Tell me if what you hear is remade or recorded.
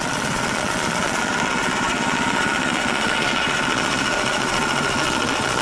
remade